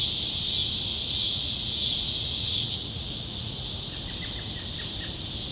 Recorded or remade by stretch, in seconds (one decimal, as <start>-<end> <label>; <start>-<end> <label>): 0.0-0.9 recorded; 0.9-3.7 remade; 3.7-5.5 recorded